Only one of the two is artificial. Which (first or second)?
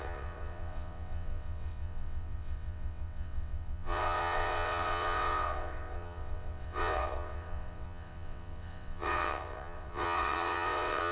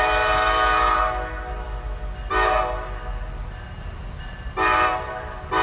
first